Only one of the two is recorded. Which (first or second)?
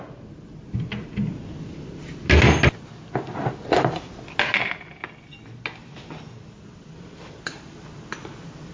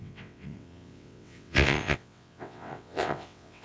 first